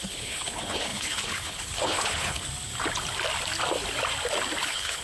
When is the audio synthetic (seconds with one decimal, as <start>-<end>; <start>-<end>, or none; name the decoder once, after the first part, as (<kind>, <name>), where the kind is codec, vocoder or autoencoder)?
0.0-2.5 (codec, HILCodec); 4.6-5.0